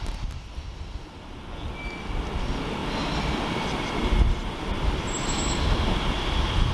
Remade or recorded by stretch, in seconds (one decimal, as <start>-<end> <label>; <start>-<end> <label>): 0.0-6.7 recorded